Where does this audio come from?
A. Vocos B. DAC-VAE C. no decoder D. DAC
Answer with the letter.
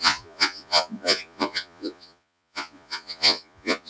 A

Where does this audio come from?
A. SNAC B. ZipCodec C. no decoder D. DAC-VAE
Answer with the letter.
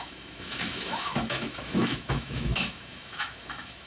D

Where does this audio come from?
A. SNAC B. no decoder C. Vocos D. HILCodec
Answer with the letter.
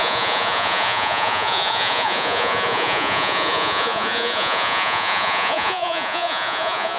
C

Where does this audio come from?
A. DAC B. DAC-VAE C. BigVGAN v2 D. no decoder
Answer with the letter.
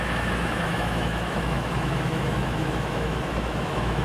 B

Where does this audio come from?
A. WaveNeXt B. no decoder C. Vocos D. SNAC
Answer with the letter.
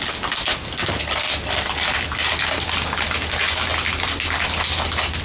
B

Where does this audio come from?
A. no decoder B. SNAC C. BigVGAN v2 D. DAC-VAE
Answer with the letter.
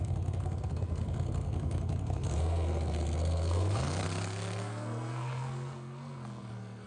B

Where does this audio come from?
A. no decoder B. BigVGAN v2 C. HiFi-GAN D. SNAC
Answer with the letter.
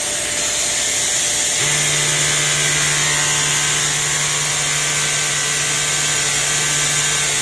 A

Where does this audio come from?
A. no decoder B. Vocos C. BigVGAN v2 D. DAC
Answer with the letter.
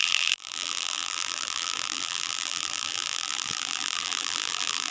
C